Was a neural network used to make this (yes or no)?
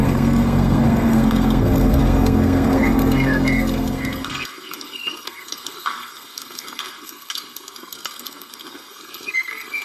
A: yes